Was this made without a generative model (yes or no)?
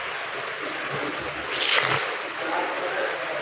yes